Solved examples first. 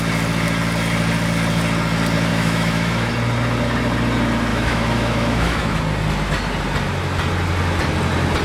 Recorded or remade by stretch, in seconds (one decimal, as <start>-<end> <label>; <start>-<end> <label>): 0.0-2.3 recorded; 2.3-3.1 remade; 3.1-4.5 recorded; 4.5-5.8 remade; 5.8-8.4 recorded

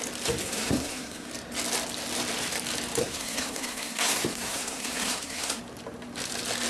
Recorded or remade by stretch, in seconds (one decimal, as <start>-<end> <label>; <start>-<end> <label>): 0.0-0.4 recorded; 0.4-1.3 remade; 1.3-3.0 recorded; 3.0-5.6 remade; 5.6-6.7 recorded

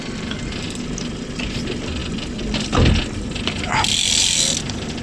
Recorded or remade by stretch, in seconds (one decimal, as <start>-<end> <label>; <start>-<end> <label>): 0.0-5.0 recorded